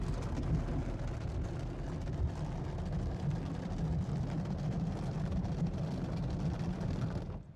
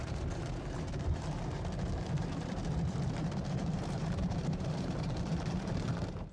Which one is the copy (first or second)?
second